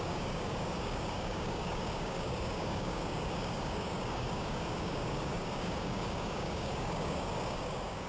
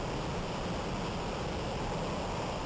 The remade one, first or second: first